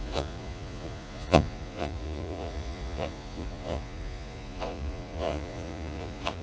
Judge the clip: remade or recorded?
remade